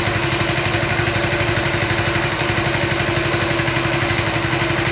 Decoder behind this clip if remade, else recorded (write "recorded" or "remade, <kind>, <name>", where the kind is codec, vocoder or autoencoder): recorded